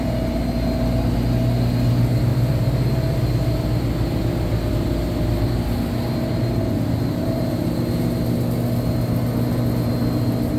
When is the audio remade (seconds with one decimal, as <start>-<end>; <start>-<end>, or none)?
2.3-6.3; 7.0-7.6